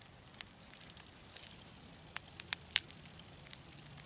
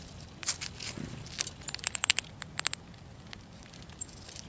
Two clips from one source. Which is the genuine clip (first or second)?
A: second